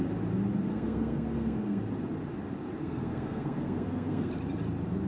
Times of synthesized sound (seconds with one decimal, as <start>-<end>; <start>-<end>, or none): 0.7-1.8; 2.8-4.3